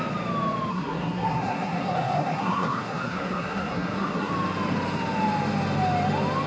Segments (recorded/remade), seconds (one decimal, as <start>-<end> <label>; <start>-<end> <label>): 0.0-0.7 recorded; 0.7-4.3 remade; 4.3-6.5 recorded